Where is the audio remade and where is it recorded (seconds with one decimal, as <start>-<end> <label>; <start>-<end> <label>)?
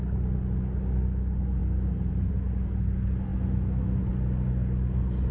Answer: 0.0-5.3 recorded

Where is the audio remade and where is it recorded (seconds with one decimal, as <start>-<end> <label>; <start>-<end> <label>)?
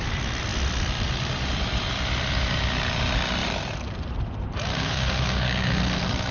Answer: 0.0-4.7 recorded; 4.7-5.8 remade; 5.8-6.3 recorded